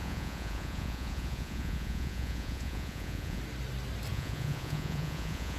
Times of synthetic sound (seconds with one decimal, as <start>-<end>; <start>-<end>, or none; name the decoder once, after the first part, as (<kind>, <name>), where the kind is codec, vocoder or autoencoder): 0.0-3.4 (vocoder, Vocos); 4.1-5.6